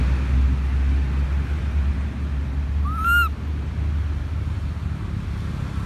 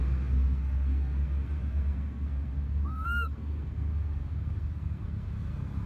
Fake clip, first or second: second